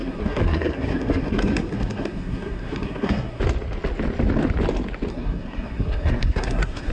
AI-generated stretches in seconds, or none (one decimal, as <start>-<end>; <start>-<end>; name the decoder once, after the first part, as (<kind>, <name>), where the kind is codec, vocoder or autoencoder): 0.0-3.4 (codec, SNAC); 5.1-6.9